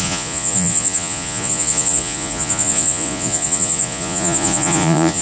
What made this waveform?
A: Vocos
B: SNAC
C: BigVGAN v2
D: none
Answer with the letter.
A